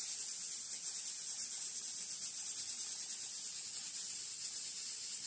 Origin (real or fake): real